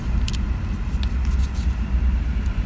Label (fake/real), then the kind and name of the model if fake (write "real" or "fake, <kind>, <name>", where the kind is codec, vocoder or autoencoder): real